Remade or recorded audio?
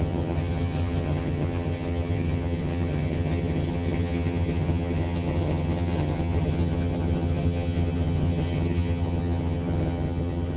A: remade